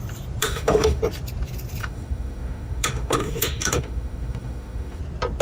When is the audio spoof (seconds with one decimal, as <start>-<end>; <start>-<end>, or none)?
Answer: 0.4-1.0; 1.8-5.0